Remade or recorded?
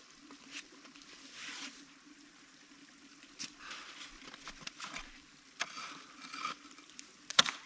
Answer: recorded